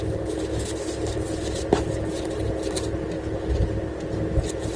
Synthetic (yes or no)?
no